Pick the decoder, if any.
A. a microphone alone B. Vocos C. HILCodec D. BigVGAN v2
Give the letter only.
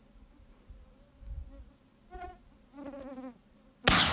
A